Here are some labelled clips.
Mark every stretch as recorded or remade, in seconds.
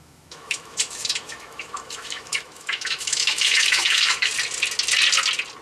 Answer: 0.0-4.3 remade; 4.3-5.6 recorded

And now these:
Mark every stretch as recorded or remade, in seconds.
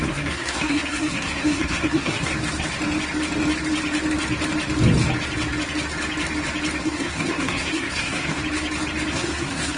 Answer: 0.0-2.3 remade; 2.3-6.8 recorded; 6.8-8.4 remade; 8.4-9.1 recorded; 9.1-9.8 remade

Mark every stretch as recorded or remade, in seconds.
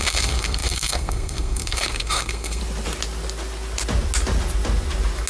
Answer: 0.0-2.6 remade; 2.6-5.3 recorded